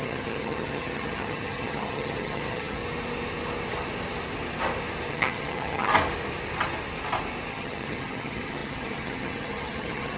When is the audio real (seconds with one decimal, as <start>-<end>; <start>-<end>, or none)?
2.8-5.1; 5.9-7.5